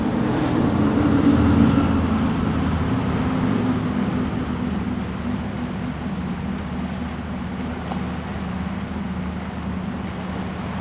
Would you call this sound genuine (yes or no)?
yes